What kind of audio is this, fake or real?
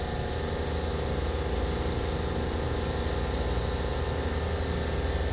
real